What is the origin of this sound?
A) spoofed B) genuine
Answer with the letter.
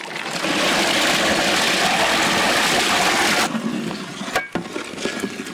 B